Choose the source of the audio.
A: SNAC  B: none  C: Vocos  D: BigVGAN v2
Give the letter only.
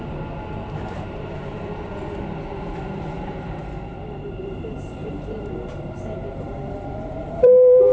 D